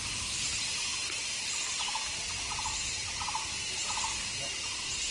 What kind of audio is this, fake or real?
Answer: real